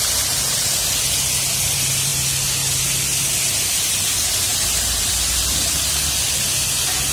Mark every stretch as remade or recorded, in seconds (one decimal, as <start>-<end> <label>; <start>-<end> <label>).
0.0-7.1 recorded